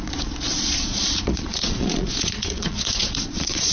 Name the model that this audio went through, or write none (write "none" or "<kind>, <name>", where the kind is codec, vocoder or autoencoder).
vocoder, Vocos